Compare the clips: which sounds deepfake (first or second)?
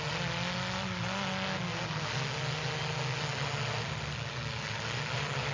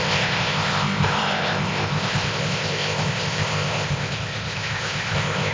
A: second